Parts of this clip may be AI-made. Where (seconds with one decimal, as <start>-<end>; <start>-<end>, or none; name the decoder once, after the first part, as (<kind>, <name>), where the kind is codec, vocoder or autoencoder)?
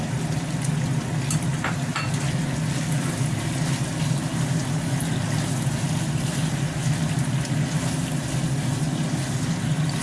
none